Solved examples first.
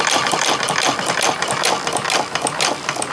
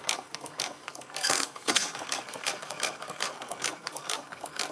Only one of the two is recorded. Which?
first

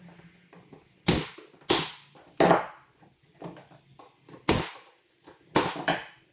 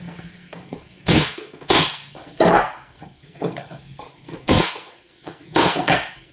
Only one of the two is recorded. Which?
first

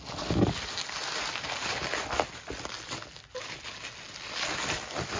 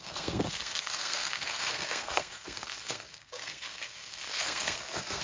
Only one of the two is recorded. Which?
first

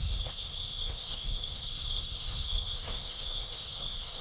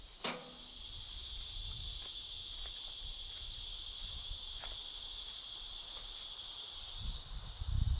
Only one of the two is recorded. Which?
second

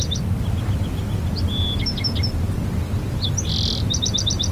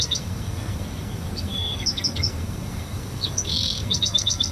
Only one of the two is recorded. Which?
first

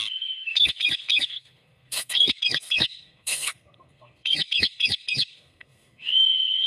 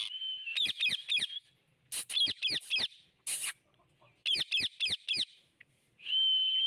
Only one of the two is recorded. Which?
second